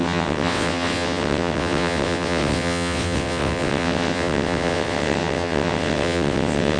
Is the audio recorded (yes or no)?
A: no